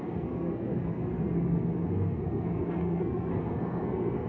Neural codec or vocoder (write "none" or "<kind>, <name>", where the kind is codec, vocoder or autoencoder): codec, SNAC